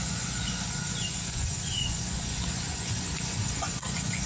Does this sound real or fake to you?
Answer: fake